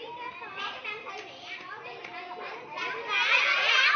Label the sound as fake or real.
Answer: real